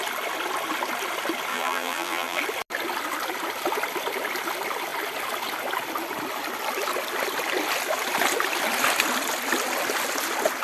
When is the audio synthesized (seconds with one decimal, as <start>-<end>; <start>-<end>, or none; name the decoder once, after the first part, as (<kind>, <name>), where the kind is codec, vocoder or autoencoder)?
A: 1.5-2.4 (vocoder, BigVGAN v2)